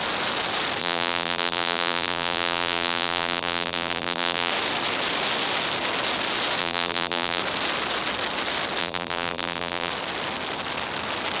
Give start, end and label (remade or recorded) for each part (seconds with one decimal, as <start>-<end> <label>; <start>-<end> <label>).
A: 0.0-0.8 recorded; 0.8-4.5 remade; 4.5-6.6 recorded; 6.6-7.4 remade; 7.4-8.8 recorded; 8.8-9.9 remade; 9.9-11.4 recorded